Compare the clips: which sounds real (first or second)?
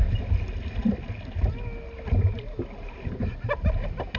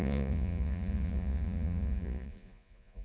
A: first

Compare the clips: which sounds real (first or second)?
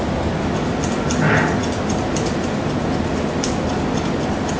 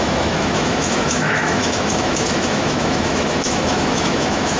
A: first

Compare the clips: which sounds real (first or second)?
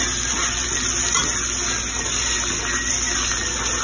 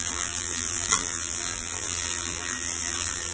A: first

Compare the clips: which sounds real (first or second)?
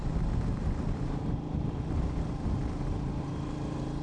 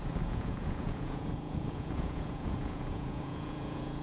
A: first